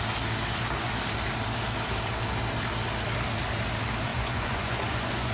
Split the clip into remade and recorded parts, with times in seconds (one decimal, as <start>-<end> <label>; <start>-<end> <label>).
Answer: 0.0-4.1 recorded; 4.1-5.3 remade